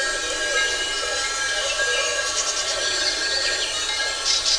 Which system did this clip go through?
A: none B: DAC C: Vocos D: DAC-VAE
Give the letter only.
A